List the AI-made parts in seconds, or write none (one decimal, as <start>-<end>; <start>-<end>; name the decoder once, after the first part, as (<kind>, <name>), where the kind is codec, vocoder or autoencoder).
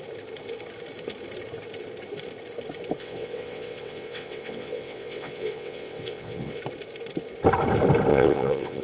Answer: 3.0-6.6 (vocoder, WaveNeXt); 8.1-8.8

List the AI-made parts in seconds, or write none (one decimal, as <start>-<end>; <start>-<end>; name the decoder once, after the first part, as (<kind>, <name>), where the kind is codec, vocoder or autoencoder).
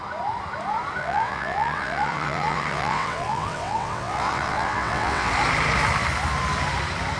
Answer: 1.0-5.3 (vocoder, WaveNeXt)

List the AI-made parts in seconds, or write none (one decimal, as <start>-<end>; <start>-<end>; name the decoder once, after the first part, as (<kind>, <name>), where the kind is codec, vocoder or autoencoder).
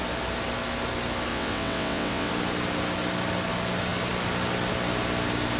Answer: 1.3-2.3 (vocoder, WaveNeXt)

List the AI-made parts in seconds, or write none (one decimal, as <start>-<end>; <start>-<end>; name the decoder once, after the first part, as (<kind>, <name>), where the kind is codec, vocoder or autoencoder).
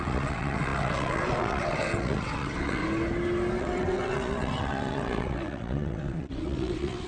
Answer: 0.0-2.8 (vocoder, WaveNeXt); 3.6-7.1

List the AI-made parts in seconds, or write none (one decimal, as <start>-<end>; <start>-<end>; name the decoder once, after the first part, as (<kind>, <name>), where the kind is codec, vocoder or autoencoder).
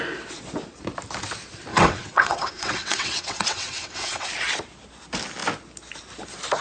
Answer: 1.7-4.3 (vocoder, WaveNeXt)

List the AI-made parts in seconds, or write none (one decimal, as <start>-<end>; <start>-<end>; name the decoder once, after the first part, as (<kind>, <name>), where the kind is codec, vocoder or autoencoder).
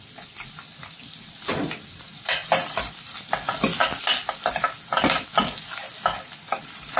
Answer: none